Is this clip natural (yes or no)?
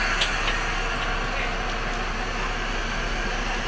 yes